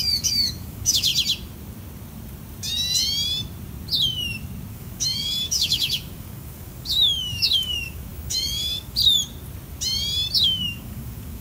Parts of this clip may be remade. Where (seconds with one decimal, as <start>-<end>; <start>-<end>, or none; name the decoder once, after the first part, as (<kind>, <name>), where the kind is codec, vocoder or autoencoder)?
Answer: 0.0-1.1 (codec, DAC); 4.7-9.0; 10.4-11.4